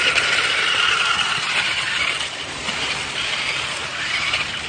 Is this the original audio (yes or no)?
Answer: yes